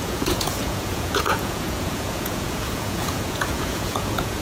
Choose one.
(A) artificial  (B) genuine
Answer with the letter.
A